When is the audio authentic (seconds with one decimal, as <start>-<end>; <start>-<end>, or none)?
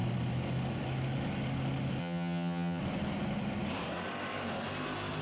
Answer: 0.0-2.0; 2.8-5.2